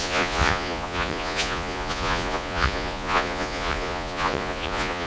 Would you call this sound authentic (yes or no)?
no